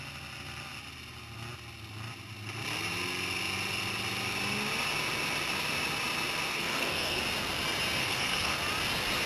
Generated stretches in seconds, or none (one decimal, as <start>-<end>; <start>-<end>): 6.5-7.2; 8.0-8.6